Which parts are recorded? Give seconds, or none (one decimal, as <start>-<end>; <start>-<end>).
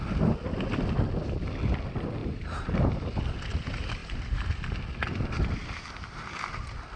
0.0-2.2; 3.2-4.0; 4.8-7.0